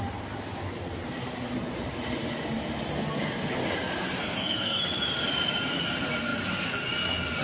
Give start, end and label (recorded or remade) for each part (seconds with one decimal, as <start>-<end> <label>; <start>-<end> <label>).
0.0-4.2 recorded; 4.2-4.8 remade; 4.8-7.4 recorded